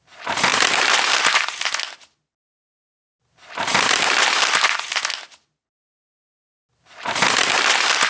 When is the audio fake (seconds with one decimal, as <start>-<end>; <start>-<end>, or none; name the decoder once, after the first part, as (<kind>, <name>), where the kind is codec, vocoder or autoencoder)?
none